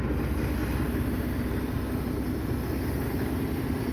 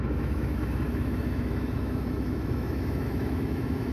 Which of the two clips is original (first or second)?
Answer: first